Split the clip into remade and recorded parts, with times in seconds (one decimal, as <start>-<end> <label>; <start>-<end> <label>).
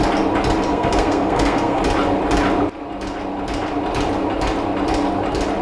0.0-0.7 recorded; 0.7-1.8 remade; 1.8-5.6 recorded